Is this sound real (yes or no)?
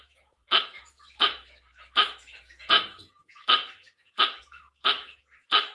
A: no